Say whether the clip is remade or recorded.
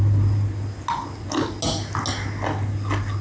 recorded